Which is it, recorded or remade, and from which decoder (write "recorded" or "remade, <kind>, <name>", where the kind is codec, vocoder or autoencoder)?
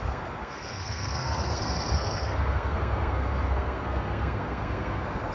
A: remade, codec, SNAC